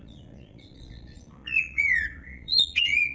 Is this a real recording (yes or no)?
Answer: no